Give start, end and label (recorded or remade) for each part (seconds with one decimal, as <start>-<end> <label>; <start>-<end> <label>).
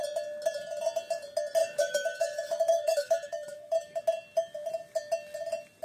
0.0-1.6 recorded; 1.6-4.0 remade; 4.0-5.8 recorded